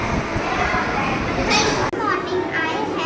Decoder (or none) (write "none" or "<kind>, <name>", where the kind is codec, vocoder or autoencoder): none